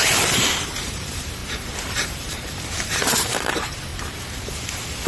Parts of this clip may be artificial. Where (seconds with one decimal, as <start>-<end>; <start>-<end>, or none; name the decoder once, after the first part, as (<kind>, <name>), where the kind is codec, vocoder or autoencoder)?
0.0-3.9 (vocoder, BigVGAN v2); 4.4-5.1